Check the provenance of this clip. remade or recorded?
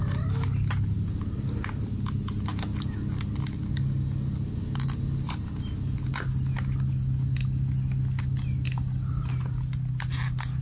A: recorded